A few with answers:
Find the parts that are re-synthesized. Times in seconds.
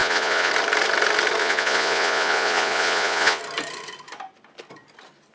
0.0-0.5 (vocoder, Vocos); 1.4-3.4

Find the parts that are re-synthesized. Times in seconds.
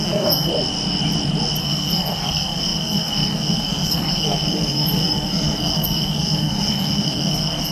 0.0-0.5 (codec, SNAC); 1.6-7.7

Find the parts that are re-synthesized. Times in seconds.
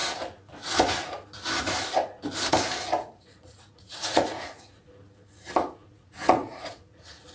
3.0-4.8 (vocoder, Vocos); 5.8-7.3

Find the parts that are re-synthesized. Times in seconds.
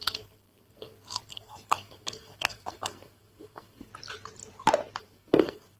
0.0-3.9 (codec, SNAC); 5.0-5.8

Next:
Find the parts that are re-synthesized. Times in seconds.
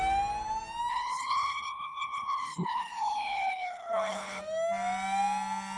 0.9-4.4 (codec, HILCodec)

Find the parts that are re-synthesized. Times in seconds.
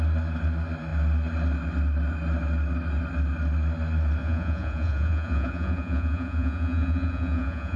4.2-7.8 (vocoder, Vocos)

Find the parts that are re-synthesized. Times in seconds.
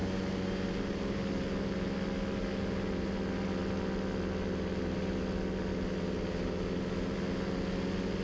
none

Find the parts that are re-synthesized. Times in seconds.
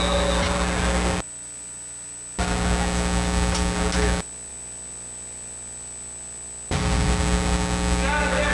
none